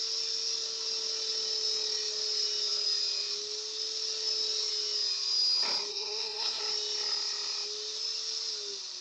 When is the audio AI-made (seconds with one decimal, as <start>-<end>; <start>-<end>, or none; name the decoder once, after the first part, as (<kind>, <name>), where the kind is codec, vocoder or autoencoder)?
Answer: 5.9-6.6 (codec, SNAC)